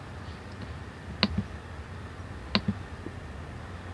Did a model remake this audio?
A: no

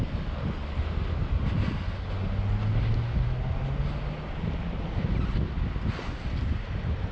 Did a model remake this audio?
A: no